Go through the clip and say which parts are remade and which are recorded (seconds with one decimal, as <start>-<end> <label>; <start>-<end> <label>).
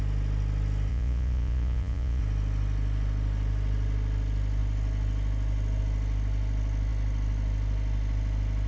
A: 0.0-0.9 recorded; 0.9-2.2 remade; 2.2-8.7 recorded